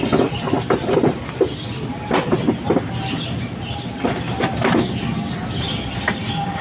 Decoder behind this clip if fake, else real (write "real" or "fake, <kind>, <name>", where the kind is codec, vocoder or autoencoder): real